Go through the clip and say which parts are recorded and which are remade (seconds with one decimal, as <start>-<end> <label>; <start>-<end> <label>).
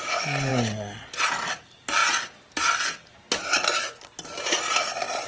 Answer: 0.0-5.3 recorded